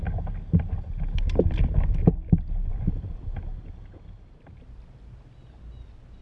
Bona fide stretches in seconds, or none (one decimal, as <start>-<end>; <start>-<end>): 0.0-2.7; 4.4-6.2